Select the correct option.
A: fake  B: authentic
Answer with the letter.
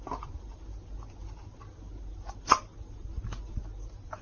B